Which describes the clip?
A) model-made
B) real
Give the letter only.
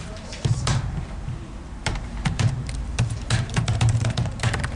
A